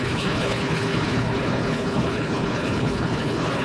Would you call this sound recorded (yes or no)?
no